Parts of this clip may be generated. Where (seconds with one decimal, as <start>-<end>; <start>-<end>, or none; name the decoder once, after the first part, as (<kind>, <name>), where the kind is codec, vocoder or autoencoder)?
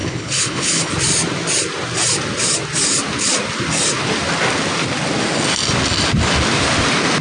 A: 0.0-0.9 (codec, HILCodec)